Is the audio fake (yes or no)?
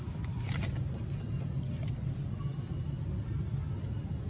no